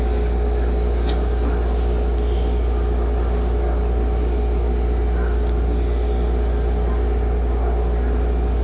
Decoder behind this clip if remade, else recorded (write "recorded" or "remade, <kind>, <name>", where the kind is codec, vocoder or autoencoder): recorded